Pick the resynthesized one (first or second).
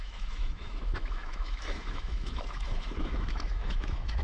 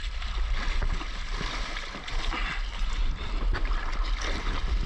first